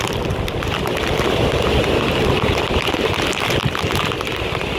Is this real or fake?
real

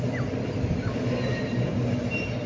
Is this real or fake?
real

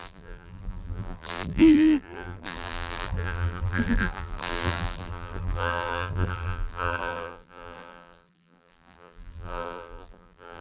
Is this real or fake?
fake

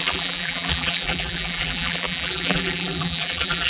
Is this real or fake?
fake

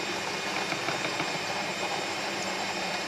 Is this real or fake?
fake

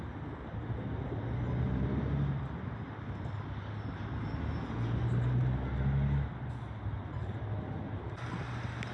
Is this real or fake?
real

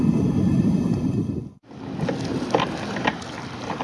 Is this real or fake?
real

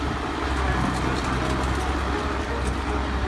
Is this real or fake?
real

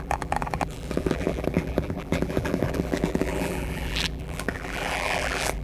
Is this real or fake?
fake